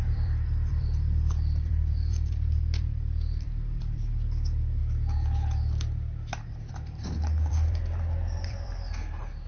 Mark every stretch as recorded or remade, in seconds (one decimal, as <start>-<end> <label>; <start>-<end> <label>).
0.0-4.8 remade; 4.8-6.7 recorded; 6.7-9.5 remade